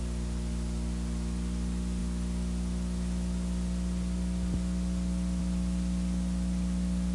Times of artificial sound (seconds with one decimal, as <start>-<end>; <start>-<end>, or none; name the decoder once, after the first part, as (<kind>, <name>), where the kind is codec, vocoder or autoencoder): none